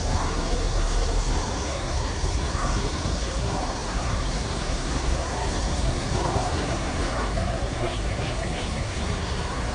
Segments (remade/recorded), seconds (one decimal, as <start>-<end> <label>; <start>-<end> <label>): 0.0-9.7 remade